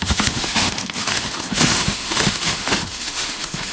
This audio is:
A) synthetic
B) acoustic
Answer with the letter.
A